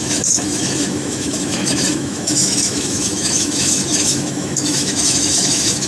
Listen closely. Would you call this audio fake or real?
fake